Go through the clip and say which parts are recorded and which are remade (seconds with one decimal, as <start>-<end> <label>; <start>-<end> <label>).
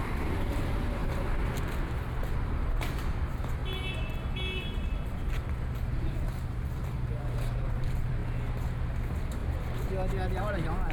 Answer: 0.0-1.0 remade; 1.0-1.9 recorded; 1.9-3.6 remade; 3.6-6.0 recorded; 6.0-8.2 remade; 8.2-9.0 recorded; 9.0-9.4 remade; 9.4-10.4 recorded; 10.4-10.9 remade